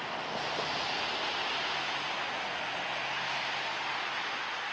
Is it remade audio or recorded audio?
recorded